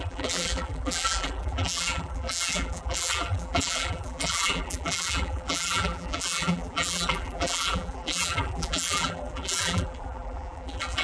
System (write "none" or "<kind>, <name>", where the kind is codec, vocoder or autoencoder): vocoder, BigVGAN v2